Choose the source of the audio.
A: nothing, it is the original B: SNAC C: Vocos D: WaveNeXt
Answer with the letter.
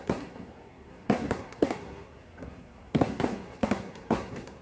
B